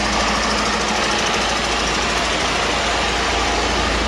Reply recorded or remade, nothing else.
recorded